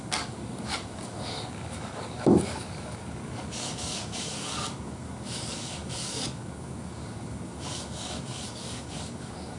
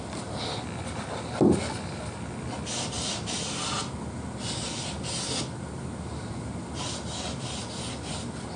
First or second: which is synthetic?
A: first